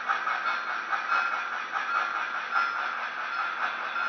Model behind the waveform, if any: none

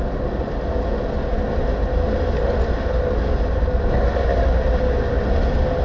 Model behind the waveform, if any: none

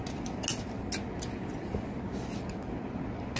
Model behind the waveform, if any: none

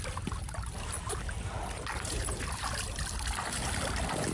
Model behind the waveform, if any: none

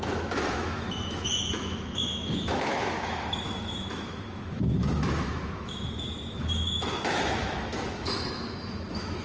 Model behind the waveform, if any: autoencoder, DAC-VAE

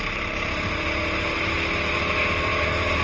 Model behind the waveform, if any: none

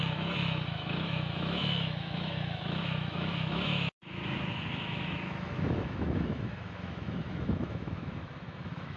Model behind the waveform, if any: autoencoder, DAC-VAE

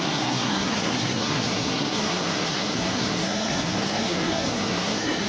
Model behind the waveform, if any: codec, SNAC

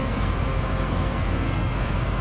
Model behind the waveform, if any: codec, SNAC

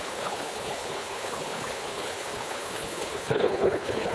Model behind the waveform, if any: codec, HILCodec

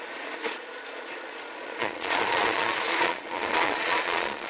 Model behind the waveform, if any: vocoder, Vocos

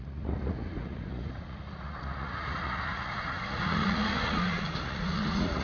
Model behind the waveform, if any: vocoder, Vocos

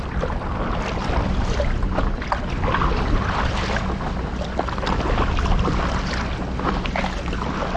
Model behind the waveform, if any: none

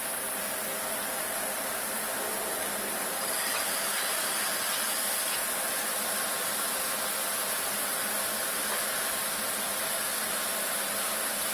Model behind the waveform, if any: none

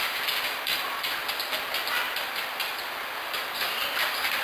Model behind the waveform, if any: none